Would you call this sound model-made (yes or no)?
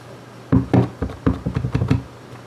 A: no